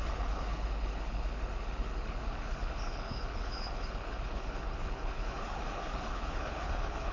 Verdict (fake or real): fake